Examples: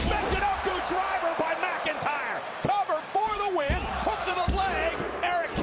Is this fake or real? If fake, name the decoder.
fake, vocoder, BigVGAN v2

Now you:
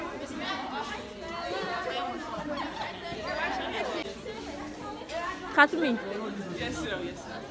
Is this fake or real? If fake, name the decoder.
real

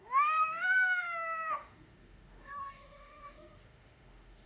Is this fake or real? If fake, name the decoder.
fake, autoencoder, DAC-VAE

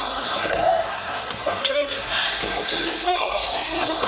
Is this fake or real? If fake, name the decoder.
fake, codec, SNAC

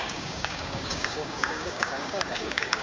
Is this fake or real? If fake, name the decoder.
fake, codec, DAC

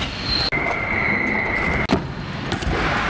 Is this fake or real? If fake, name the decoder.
real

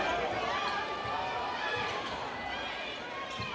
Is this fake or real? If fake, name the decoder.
real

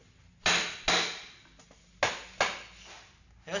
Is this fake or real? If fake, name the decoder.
real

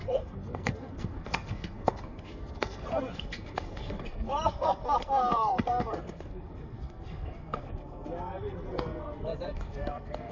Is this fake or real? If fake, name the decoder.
fake, codec, SNAC